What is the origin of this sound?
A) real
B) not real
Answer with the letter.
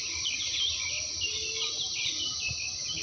A